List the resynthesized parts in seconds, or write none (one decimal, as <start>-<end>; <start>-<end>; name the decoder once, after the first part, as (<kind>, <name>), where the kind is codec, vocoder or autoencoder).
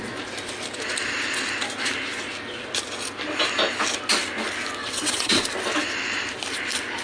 4.8-5.4 (vocoder, WaveNeXt)